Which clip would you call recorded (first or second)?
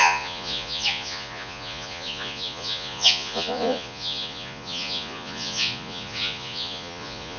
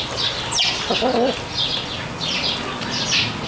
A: second